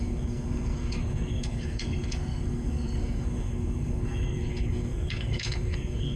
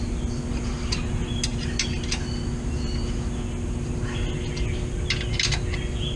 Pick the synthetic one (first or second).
first